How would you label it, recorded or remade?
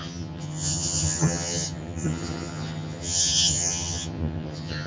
remade